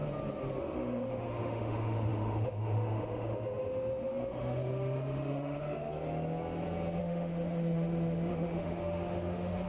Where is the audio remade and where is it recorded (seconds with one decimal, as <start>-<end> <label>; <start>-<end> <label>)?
0.0-0.6 recorded; 0.6-5.9 remade; 5.9-7.0 recorded; 7.0-9.7 remade